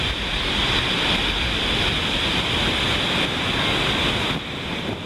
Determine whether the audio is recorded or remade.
recorded